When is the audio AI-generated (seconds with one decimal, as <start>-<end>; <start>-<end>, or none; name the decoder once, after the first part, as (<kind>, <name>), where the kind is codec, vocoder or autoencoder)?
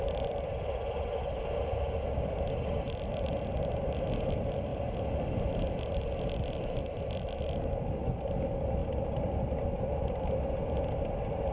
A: none